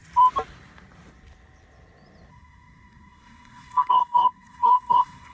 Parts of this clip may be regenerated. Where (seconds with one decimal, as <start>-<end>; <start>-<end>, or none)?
2.3-5.3